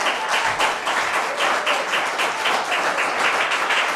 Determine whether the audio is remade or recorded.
recorded